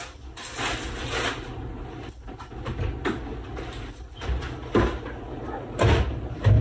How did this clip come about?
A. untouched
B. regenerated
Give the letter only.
A